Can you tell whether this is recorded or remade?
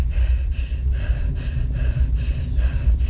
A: recorded